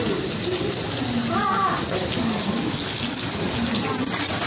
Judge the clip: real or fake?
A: real